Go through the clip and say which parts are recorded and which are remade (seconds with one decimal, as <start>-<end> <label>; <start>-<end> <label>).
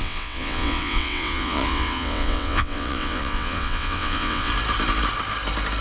0.0-4.5 remade; 4.5-5.8 recorded